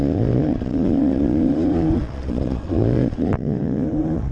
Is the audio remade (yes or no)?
yes